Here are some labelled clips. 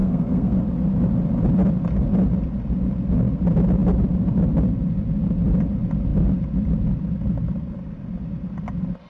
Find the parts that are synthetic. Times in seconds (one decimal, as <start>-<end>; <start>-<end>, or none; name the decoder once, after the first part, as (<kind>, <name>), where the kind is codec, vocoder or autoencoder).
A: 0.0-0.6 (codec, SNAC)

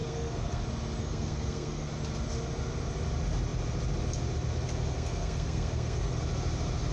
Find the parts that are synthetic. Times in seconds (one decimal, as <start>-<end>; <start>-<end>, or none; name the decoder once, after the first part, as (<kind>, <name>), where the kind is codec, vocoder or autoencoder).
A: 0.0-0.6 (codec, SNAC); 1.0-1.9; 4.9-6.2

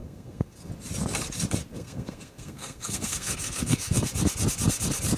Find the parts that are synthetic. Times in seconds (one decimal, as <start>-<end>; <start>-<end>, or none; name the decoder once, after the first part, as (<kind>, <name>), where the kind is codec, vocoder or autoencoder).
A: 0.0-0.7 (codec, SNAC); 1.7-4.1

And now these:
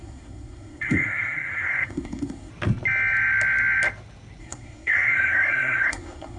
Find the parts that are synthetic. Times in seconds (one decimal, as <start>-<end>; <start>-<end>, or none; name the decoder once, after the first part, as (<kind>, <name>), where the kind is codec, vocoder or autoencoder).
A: 0.0-2.5 (codec, SNAC); 4.4-6.4

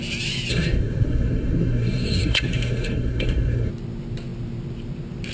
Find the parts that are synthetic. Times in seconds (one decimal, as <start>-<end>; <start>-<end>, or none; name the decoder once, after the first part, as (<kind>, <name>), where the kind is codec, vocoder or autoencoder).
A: 0.5-3.7 (codec, SNAC)

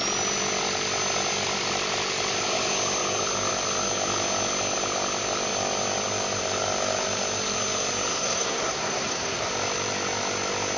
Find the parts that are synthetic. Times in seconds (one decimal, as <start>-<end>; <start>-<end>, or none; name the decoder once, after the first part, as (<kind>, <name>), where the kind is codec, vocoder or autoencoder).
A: 8.1-9.5 (codec, SNAC)

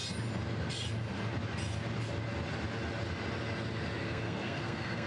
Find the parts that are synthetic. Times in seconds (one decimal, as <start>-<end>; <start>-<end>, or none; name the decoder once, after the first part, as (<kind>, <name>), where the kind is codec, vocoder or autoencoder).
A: 4.0-5.1 (codec, SNAC)